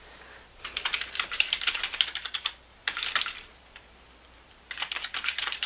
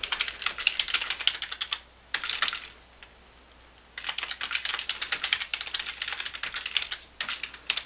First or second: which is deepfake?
first